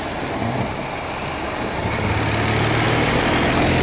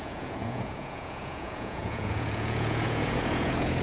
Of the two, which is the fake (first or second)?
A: second